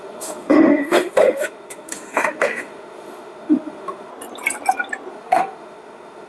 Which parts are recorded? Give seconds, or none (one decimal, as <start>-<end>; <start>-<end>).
4.1-5.1